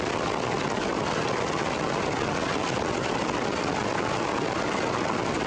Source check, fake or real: real